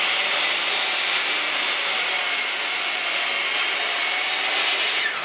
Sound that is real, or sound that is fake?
real